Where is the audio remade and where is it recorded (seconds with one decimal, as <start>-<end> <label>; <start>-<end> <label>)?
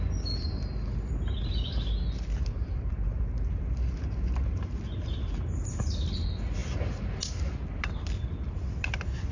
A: 0.0-9.3 recorded